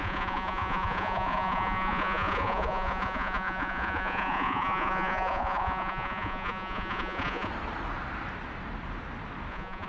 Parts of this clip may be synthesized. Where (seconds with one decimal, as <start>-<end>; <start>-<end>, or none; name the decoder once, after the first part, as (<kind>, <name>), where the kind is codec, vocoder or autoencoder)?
0.0-7.5 (vocoder, Vocos); 9.5-9.9